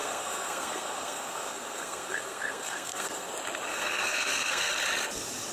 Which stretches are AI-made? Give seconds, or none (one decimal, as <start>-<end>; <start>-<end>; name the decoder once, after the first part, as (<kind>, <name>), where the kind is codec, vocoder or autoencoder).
0.0-3.3 (codec, SNAC); 3.7-4.7